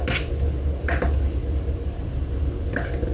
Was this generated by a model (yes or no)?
no